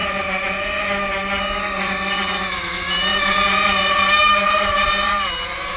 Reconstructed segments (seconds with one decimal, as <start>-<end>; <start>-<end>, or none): 0.0-0.8; 3.1-5.1